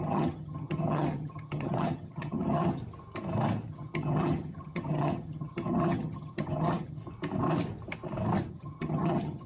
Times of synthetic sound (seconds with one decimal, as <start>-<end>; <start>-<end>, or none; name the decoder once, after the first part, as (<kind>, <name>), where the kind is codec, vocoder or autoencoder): 0.0-2.8 (vocoder, HiFi-GAN); 3.7-7.0; 8.5-9.5